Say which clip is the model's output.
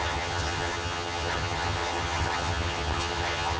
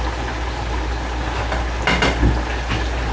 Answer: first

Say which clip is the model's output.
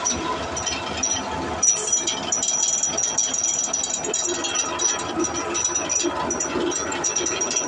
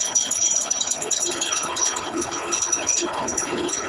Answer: second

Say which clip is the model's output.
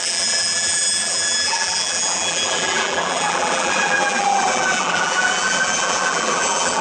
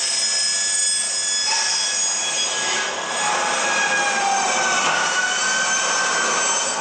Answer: first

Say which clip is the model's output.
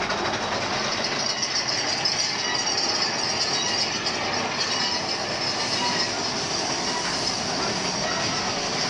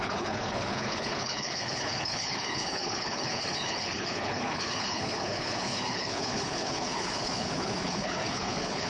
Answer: second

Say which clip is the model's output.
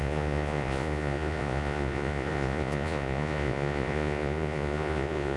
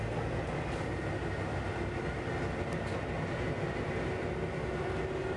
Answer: first